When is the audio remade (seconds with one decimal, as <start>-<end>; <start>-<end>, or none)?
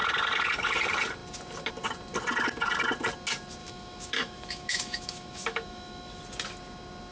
3.6-6.2